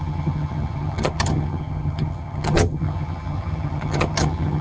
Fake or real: fake